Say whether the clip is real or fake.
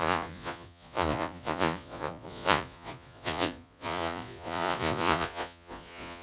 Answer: fake